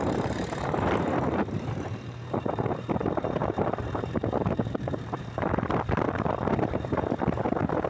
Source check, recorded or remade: remade